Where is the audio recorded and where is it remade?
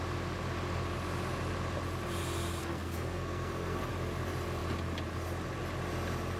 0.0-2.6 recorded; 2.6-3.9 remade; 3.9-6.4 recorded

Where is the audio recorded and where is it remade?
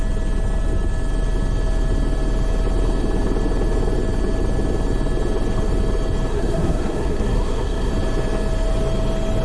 0.0-6.3 recorded; 6.3-7.9 remade; 7.9-9.4 recorded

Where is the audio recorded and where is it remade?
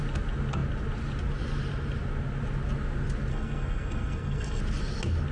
0.0-3.3 recorded; 3.3-4.6 remade; 4.6-5.3 recorded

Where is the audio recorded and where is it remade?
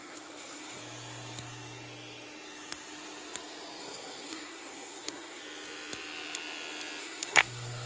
0.0-0.8 remade; 0.8-3.8 recorded; 3.8-5.4 remade; 5.4-7.0 recorded; 7.0-7.9 remade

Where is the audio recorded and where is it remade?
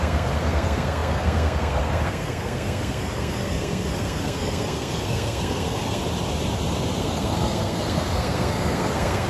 0.0-6.0 remade; 6.0-7.0 recorded; 7.0-9.3 remade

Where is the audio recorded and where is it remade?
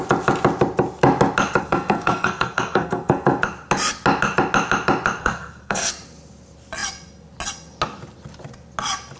0.0-1.6 recorded; 1.6-3.4 remade; 3.4-5.2 recorded; 5.2-5.9 remade; 5.9-9.2 recorded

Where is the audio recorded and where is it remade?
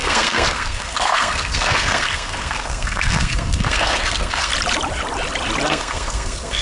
0.0-4.5 remade; 4.5-5.7 recorded; 5.7-6.6 remade